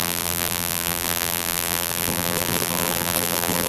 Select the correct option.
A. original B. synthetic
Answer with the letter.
B